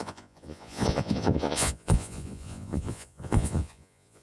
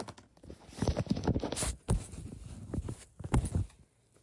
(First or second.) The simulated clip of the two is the first